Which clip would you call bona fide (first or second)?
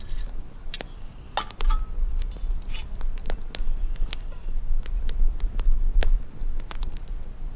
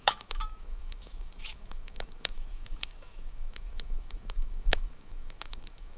first